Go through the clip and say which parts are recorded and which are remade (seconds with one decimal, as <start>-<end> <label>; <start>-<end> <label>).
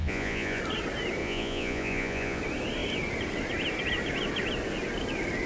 0.0-0.6 remade; 0.6-1.2 recorded; 1.2-2.4 remade; 2.4-5.5 recorded